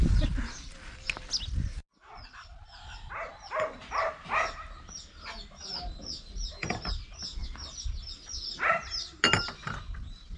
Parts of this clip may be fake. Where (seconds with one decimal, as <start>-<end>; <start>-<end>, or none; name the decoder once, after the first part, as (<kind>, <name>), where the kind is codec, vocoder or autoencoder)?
none